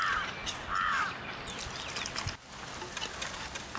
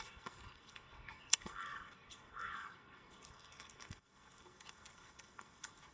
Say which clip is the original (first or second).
first